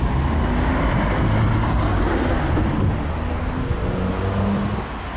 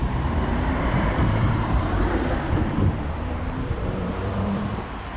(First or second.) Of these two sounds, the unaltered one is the first